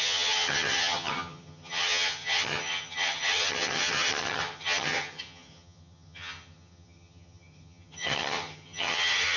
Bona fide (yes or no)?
no